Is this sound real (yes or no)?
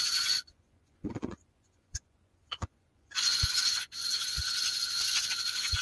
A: no